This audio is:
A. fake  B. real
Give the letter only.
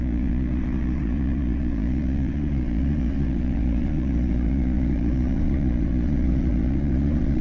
A